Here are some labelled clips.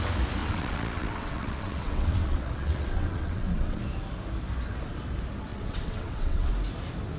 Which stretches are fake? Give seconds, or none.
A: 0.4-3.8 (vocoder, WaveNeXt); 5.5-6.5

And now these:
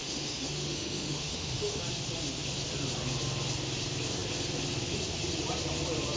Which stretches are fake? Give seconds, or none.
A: 0.0-1.8 (autoencoder, DAC-VAE)